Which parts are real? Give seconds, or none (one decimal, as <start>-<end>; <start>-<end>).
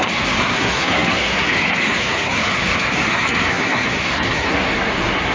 none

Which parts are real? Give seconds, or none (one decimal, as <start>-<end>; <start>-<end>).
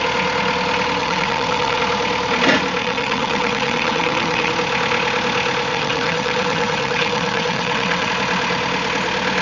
0.0-1.0; 1.8-2.8; 4.5-5.7; 8.1-9.4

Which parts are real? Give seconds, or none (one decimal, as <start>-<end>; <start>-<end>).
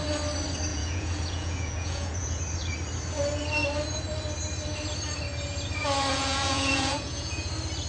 0.0-0.7; 2.4-6.1; 7.5-7.9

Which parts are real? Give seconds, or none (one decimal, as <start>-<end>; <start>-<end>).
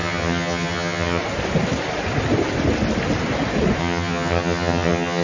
1.2-3.8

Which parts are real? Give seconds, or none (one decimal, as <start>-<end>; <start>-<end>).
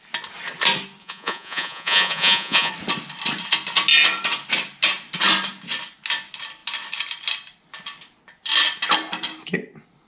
0.0-1.0; 2.7-10.1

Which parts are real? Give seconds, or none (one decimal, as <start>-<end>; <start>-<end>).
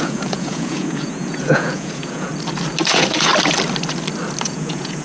2.3-2.9; 3.3-4.4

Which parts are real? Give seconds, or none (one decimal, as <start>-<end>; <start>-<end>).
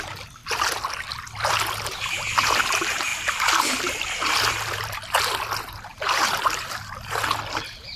0.0-5.9; 7.3-8.0